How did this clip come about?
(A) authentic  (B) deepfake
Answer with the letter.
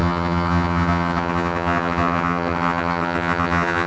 B